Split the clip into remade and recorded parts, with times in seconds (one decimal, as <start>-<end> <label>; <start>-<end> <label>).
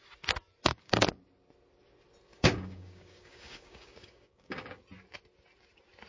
0.0-0.7 recorded; 0.7-1.2 remade; 1.2-2.3 recorded; 2.3-4.8 remade; 4.8-6.1 recorded